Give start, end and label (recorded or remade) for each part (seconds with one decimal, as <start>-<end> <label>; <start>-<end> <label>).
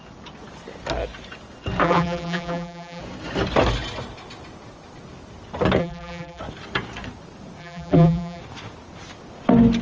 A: 0.0-1.8 recorded; 1.8-3.0 remade; 3.0-5.8 recorded; 5.8-6.4 remade; 6.4-7.6 recorded; 7.6-8.4 remade; 8.4-9.8 recorded